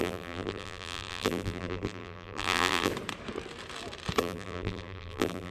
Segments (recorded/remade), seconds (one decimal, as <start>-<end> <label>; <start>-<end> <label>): 0.0-2.9 remade; 2.9-4.2 recorded; 4.2-5.5 remade